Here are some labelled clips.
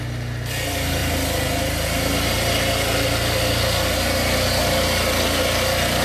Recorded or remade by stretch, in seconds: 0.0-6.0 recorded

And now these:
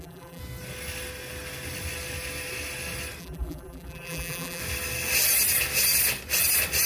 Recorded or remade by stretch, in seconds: 0.0-0.4 remade; 0.4-3.2 recorded; 3.2-4.6 remade; 4.6-6.9 recorded

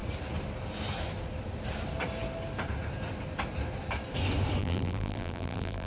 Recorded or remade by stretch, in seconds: 0.0-4.6 recorded; 4.6-5.9 remade

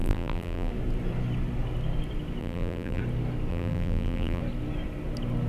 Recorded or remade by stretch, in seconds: 0.0-0.7 remade; 0.7-2.4 recorded; 2.4-3.0 remade; 3.0-3.5 recorded; 3.5-4.4 remade; 4.4-5.5 recorded

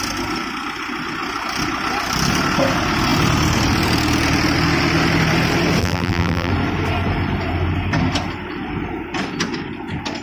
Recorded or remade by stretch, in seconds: 0.0-5.8 recorded; 5.8-6.5 remade; 6.5-10.2 recorded

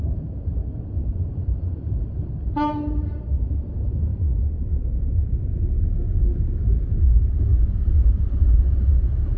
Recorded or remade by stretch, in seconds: 0.0-0.6 remade; 0.6-1.3 recorded; 1.3-4.1 remade; 4.1-7.0 recorded; 7.0-9.4 remade

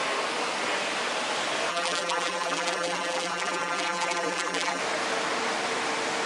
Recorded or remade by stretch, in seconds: 0.0-1.7 recorded; 1.7-4.8 remade; 4.8-6.3 recorded